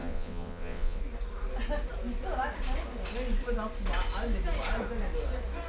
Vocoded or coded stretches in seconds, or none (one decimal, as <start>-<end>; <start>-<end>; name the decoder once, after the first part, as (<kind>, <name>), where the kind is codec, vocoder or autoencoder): 0.0-1.0 (vocoder, WaveNeXt)